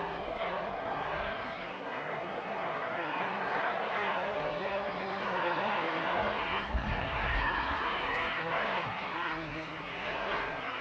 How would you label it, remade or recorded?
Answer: remade